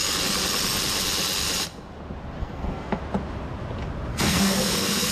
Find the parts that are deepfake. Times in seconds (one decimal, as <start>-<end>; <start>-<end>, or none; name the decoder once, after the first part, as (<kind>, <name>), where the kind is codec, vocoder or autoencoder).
2.4-3.0 (codec, SNAC); 4.1-5.1